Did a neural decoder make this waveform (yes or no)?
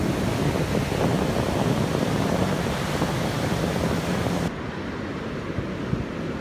no